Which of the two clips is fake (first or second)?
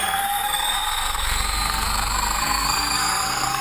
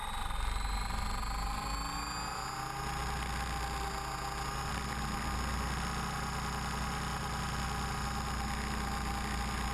first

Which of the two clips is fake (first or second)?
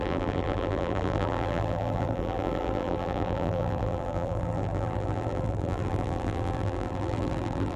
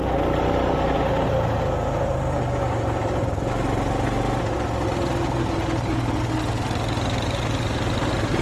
first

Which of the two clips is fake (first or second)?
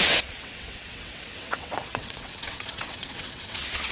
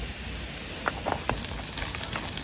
first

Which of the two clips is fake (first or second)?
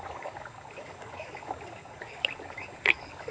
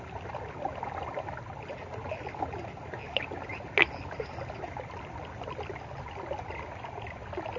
first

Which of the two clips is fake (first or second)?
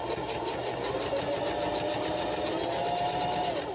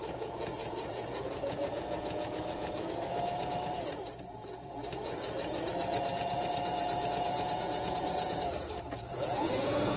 second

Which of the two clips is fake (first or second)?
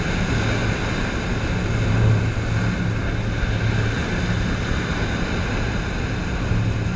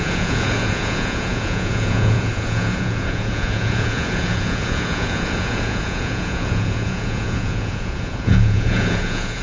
second